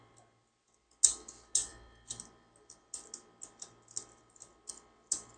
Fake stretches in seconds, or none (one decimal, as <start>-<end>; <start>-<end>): none